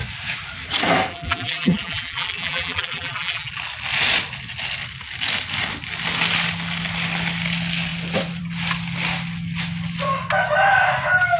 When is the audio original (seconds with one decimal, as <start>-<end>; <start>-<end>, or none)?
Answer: 0.0-1.1; 3.5-11.4